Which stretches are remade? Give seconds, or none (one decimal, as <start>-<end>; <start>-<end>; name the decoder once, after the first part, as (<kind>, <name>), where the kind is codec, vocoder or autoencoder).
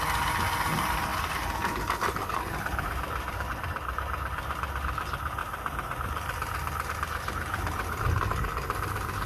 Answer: none